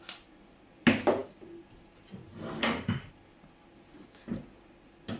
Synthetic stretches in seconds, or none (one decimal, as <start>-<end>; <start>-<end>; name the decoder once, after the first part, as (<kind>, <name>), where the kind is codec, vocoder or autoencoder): 2.6-3.1 (autoencoder, DAC-VAE)